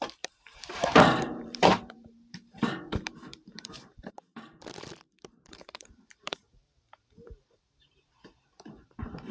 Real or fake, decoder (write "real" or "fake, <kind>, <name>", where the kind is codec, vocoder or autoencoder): fake, vocoder, BigVGAN v2